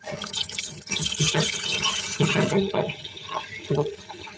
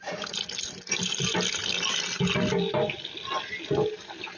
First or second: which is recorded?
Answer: second